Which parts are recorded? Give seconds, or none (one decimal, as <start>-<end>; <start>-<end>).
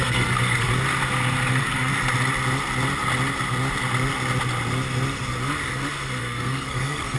0.7-1.5; 1.9-6.2